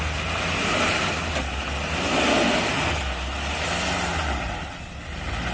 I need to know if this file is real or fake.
real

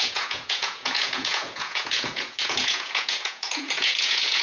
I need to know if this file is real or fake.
fake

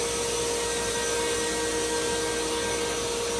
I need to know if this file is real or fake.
real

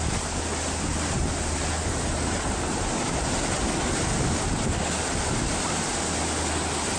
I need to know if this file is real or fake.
real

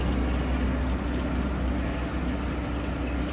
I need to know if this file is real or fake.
real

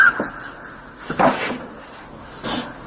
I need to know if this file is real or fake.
real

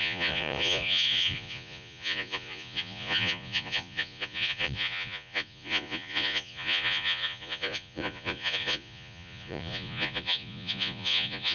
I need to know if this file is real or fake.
fake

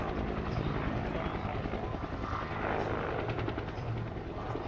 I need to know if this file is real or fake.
real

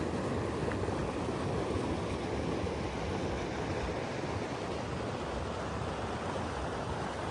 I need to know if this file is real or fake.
real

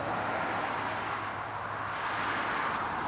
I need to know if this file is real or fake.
real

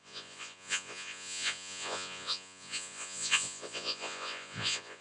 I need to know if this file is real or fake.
fake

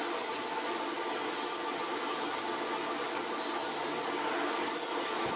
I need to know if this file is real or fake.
real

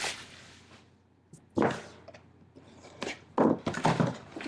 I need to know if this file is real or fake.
real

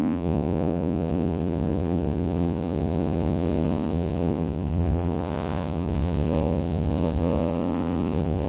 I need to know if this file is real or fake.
fake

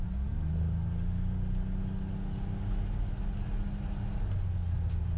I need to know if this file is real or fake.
real